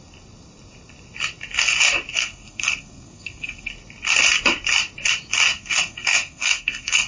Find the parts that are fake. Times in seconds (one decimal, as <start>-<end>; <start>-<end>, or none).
2.2-3.7; 5.5-7.1